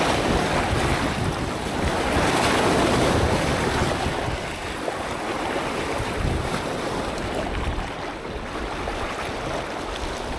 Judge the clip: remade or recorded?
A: recorded